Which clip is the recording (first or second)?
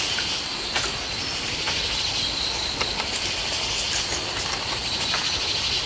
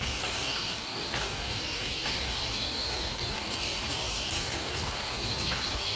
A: first